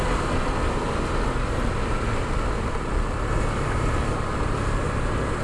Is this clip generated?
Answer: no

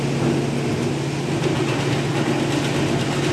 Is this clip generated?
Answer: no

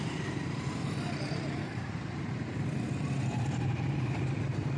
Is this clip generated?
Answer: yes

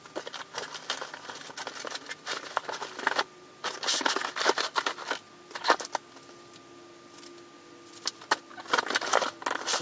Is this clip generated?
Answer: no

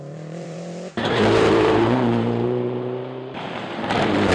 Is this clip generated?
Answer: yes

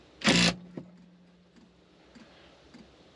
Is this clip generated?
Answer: no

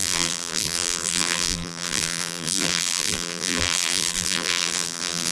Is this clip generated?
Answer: yes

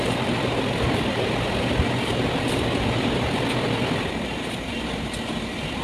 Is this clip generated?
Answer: yes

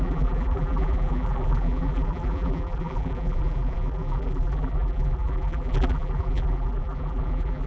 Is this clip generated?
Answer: yes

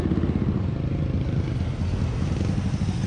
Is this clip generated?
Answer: no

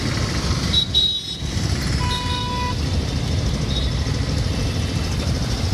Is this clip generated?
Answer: no